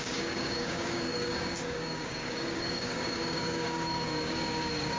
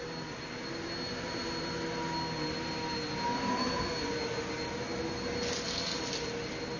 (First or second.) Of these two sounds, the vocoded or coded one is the first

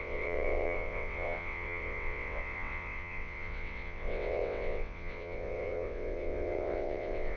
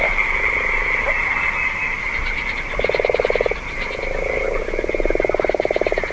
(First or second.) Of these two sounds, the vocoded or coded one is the first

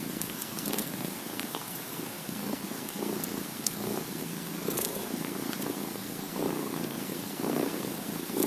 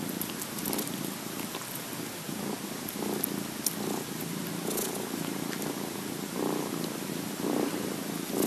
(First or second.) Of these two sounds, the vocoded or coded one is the first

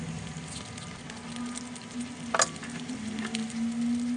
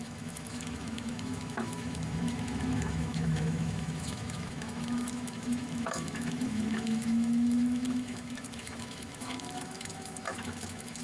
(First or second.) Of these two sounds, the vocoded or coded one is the second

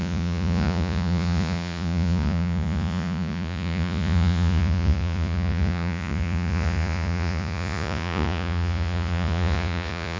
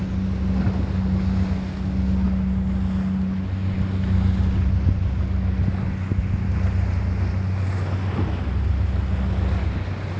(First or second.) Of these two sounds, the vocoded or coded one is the first